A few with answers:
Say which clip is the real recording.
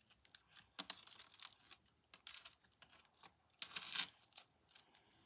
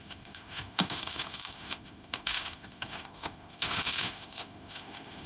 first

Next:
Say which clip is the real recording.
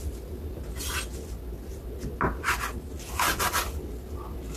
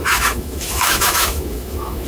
first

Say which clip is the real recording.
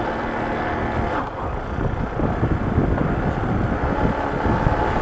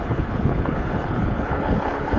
first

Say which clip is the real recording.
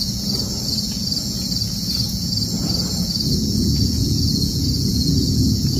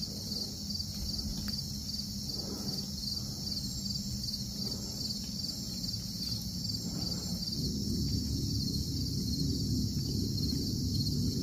second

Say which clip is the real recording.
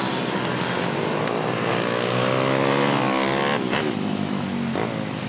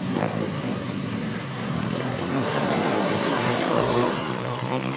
first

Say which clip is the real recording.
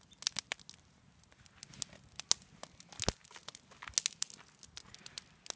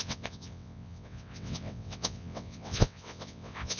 first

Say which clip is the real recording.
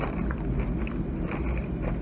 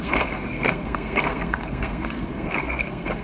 first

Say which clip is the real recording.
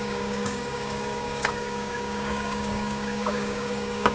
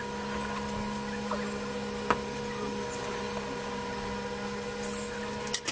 second